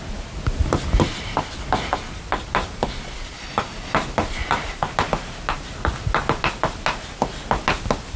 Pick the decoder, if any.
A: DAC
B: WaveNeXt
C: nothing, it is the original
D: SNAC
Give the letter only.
C